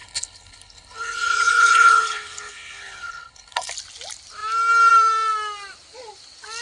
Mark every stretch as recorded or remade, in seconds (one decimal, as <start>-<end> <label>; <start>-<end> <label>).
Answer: 0.0-3.7 remade; 3.7-6.6 recorded